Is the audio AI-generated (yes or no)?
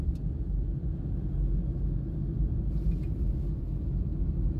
no